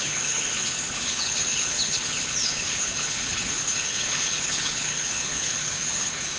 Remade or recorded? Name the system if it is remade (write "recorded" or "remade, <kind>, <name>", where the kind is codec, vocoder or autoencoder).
remade, codec, HILCodec